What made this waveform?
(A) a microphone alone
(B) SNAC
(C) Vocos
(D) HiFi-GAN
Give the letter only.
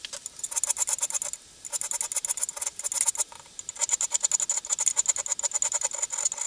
A